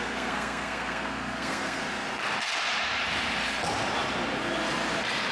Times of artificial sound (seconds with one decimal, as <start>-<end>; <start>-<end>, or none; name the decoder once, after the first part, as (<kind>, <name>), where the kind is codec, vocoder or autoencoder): 0.0-1.8 (codec, SNAC)